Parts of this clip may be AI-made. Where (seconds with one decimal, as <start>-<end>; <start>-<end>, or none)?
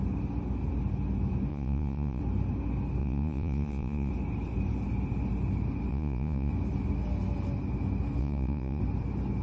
1.5-2.2; 3.0-4.1; 5.9-6.5; 8.2-8.8